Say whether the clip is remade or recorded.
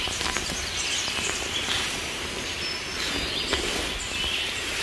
recorded